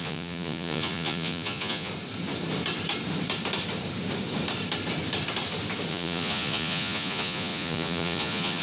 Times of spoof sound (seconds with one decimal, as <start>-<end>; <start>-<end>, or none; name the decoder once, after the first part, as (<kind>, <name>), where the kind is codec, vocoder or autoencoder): 0.0-1.9 (vocoder, Vocos); 5.9-8.6